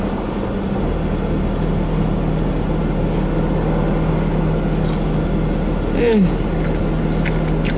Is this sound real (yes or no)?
yes